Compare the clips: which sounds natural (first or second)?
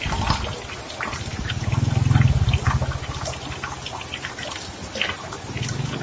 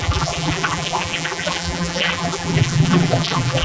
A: first